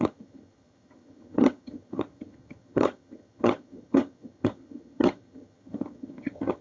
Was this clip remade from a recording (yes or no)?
yes